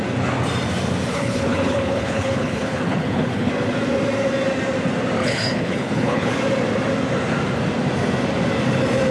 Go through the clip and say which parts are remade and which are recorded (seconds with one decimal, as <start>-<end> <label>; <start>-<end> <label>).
0.0-1.1 recorded; 1.1-3.5 remade; 3.5-5.2 recorded; 5.2-6.3 remade; 6.3-9.1 recorded